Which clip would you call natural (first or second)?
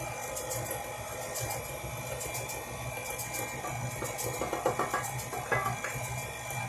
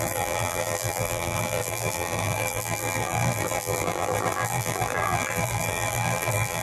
first